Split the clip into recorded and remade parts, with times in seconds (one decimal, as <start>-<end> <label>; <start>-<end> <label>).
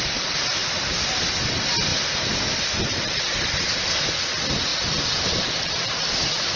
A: 0.0-0.6 remade; 0.6-1.3 recorded; 1.3-1.9 remade; 1.9-3.1 recorded; 3.1-6.6 remade